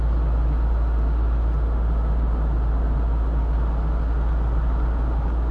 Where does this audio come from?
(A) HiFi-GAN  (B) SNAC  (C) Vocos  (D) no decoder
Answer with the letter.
D